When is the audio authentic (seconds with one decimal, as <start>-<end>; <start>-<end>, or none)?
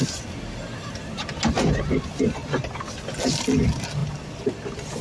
0.0-5.0